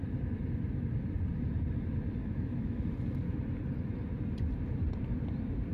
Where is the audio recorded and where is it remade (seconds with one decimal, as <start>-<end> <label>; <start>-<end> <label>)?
0.0-2.2 recorded; 2.2-2.9 remade; 2.9-5.7 recorded